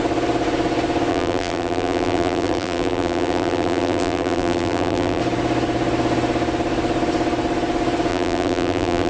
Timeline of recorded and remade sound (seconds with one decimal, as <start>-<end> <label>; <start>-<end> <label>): 0.0-1.1 recorded; 1.1-5.2 remade; 5.2-8.1 recorded; 8.1-9.1 remade